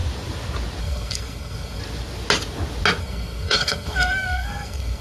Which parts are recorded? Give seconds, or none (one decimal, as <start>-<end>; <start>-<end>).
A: 0.0-0.8; 1.8-3.0